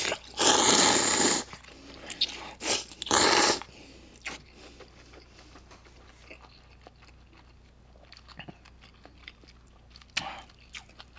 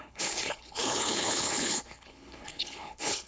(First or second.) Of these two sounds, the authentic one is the first